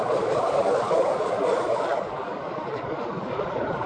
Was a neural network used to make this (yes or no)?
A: yes